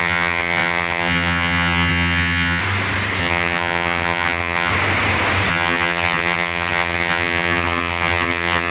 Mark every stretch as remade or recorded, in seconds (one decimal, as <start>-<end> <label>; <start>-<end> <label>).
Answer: 0.0-2.6 remade; 2.6-3.2 recorded; 3.2-4.7 remade; 4.7-5.5 recorded; 5.5-8.7 remade